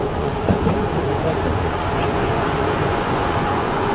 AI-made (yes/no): yes